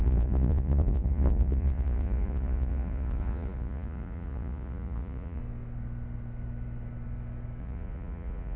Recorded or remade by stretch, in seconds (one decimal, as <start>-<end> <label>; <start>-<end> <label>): 0.0-5.4 remade; 5.4-7.6 recorded; 7.6-8.6 remade